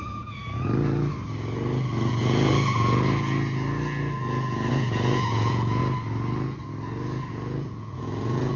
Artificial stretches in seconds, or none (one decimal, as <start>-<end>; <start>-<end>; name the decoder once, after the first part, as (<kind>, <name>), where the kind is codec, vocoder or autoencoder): 0.0-0.4 (vocoder, Vocos); 2.1-2.5; 4.7-5.8; 7.3-8.6